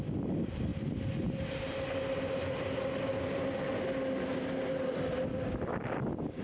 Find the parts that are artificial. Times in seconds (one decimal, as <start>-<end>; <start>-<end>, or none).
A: none